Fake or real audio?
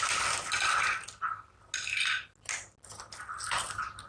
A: real